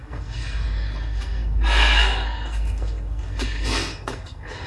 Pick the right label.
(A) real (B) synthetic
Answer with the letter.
B